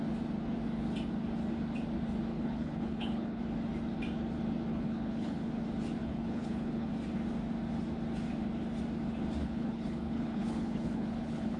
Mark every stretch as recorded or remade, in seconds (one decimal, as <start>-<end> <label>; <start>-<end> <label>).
0.0-2.3 recorded; 2.3-3.4 remade; 3.4-4.7 recorded; 4.7-5.5 remade; 5.5-6.0 recorded; 6.0-6.9 remade; 6.9-9.4 recorded; 9.4-11.6 remade

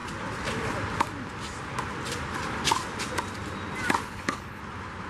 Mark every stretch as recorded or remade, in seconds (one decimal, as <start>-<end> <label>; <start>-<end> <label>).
0.0-4.0 recorded; 4.0-4.6 remade; 4.6-5.1 recorded

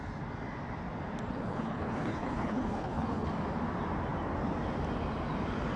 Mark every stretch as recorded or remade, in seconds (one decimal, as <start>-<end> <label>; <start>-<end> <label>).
0.0-1.3 recorded; 1.3-3.3 remade; 3.3-5.8 recorded

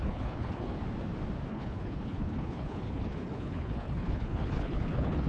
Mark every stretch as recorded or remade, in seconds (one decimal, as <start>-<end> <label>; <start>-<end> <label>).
0.0-0.8 remade; 0.8-1.5 recorded; 1.5-5.3 remade